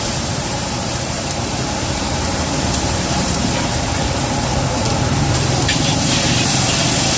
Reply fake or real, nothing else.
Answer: fake